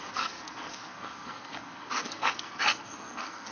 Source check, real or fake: fake